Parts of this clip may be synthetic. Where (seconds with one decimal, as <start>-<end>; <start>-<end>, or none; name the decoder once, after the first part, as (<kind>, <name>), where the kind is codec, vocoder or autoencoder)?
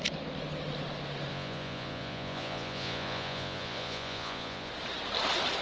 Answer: 1.3-4.7 (vocoder, Vocos)